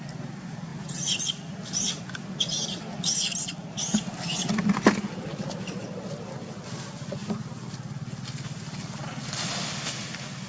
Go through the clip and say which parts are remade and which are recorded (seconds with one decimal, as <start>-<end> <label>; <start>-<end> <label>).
0.0-0.7 recorded; 0.7-2.0 remade; 2.0-7.2 recorded; 7.2-8.2 remade; 8.2-10.5 recorded